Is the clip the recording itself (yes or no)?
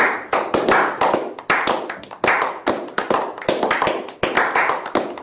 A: yes